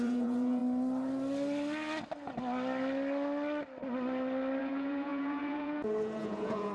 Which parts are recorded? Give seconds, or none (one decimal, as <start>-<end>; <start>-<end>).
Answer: 0.6-4.6